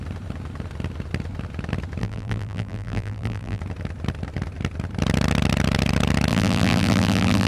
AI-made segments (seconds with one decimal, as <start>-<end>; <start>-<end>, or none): 2.0-3.6; 6.3-7.5